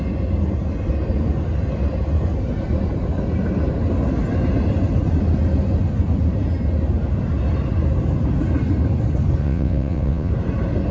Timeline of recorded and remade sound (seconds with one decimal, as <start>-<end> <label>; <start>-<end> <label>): 0.0-9.4 recorded; 9.4-10.3 remade; 10.3-10.9 recorded